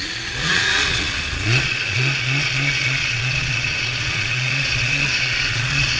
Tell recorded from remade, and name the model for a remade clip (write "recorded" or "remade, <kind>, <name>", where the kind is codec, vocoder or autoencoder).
remade, vocoder, Vocos